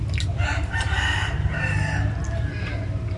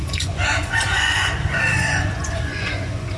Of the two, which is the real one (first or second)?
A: first